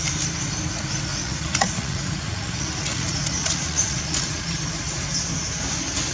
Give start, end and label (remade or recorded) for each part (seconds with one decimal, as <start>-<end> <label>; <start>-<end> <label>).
0.0-1.1 recorded; 1.1-4.4 remade; 4.4-6.1 recorded